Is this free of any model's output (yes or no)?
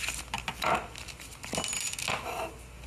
yes